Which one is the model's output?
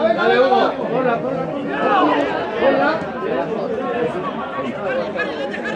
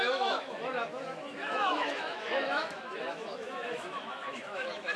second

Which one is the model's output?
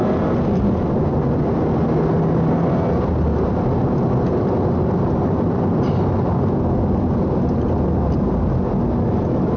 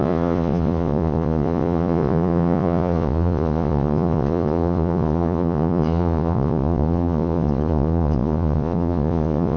second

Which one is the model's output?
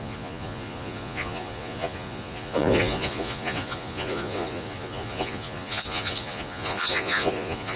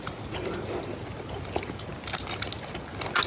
first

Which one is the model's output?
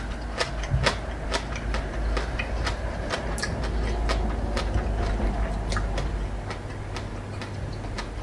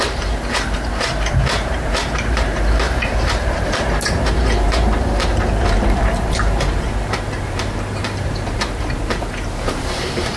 second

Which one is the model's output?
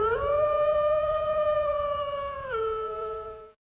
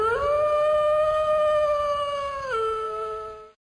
first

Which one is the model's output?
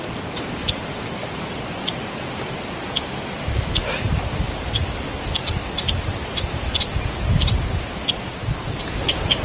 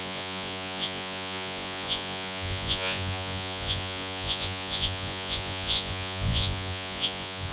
second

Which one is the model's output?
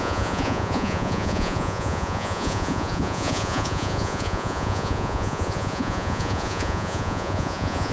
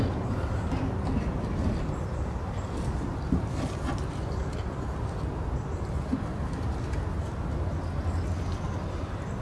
first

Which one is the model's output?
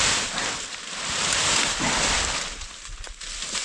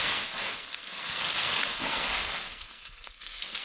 second